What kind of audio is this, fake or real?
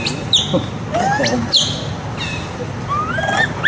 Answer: real